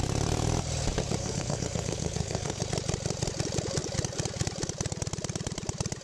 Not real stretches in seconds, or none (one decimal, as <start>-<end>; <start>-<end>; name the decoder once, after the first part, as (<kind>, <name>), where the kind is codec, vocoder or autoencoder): 1.2-2.6 (codec, SNAC)